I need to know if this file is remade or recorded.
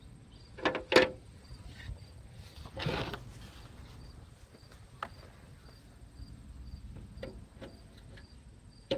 recorded